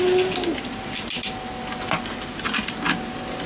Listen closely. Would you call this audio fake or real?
real